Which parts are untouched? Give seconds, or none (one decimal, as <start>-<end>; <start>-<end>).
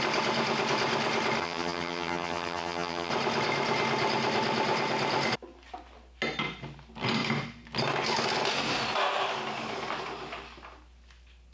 0.0-1.4; 3.1-11.5